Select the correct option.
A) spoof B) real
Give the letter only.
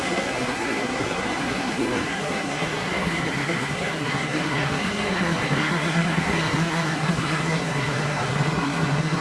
A